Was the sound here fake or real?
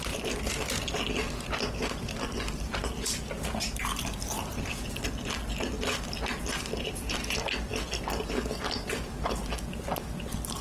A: real